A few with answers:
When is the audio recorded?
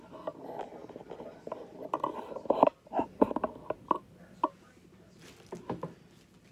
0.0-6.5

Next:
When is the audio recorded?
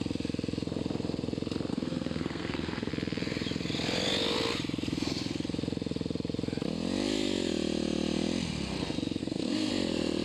0.0-1.7; 2.9-9.2; 9.7-10.2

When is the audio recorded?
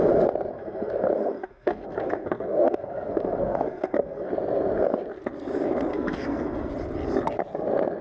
0.0-0.5; 4.3-5.9; 6.7-8.0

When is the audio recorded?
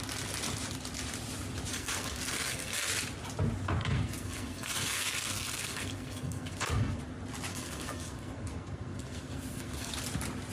0.0-1.7; 2.9-3.8; 7.0-7.5; 9.9-10.5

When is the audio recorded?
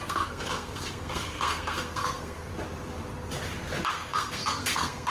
2.5-3.9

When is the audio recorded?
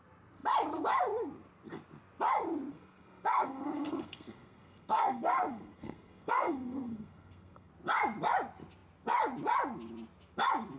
0.0-2.7; 7.7-10.8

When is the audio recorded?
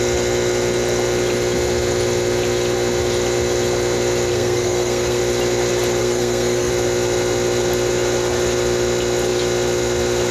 0.0-4.3; 5.2-6.0; 6.7-10.3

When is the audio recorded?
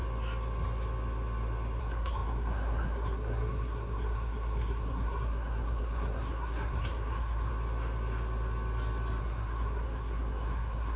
0.0-1.8; 7.5-9.2